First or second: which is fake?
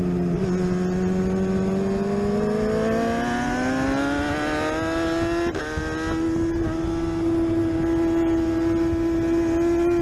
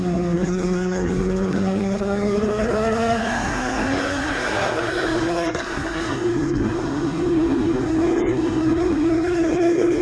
second